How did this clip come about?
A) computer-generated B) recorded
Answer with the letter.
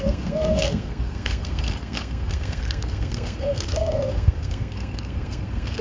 A